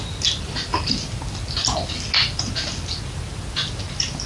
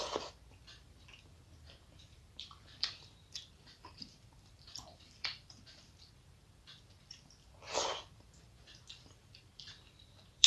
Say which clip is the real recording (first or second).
first